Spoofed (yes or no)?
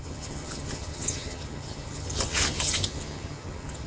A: yes